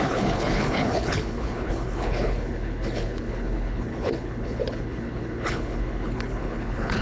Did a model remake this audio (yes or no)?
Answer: yes